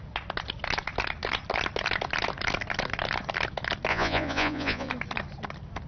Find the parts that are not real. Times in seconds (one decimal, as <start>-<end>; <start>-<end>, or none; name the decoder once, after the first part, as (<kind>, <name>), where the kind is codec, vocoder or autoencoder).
3.9-4.9 (vocoder, Vocos)